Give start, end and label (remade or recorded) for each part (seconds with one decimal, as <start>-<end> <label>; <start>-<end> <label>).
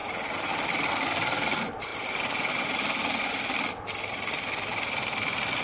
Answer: 0.0-5.6 recorded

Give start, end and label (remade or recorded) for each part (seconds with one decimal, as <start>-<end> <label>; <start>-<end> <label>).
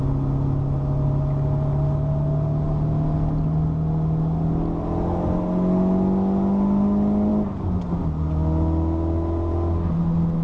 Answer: 0.0-10.4 recorded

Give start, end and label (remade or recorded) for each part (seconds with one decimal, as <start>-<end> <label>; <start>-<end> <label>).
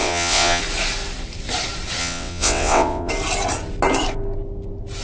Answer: 0.0-0.6 remade; 0.6-2.0 recorded; 2.0-3.1 remade; 3.1-5.0 recorded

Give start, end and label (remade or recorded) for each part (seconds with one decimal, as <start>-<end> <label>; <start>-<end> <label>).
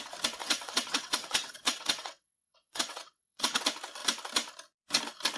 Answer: 0.0-0.4 recorded; 0.4-3.6 remade; 3.6-5.4 recorded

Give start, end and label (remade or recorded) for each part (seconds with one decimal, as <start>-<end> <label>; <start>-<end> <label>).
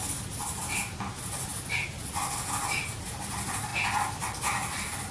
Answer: 0.0-5.1 recorded